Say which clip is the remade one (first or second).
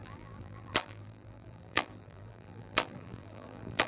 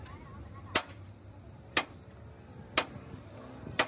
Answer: first